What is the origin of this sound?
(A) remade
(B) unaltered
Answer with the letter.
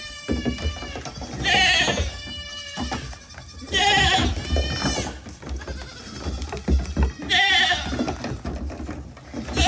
B